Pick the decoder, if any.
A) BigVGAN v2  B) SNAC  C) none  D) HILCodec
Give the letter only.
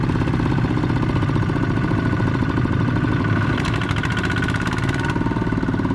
A